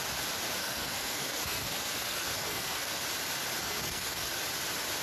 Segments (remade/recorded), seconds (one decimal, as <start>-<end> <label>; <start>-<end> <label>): 0.0-0.6 recorded; 0.6-3.0 remade; 3.0-3.6 recorded; 3.6-4.4 remade; 4.4-5.0 recorded